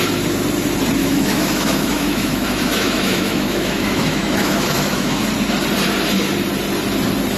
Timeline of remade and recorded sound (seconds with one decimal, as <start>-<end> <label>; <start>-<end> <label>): 0.0-1.0 recorded; 1.0-5.3 remade; 5.3-7.4 recorded